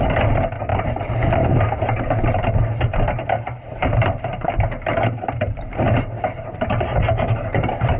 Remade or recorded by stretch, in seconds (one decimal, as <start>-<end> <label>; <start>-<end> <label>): 0.0-0.7 recorded; 0.7-2.0 remade; 2.0-3.2 recorded; 3.2-8.0 remade